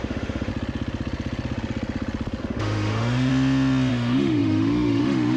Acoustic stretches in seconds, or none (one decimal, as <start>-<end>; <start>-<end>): 0.5-2.4; 3.3-3.9